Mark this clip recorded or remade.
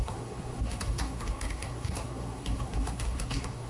remade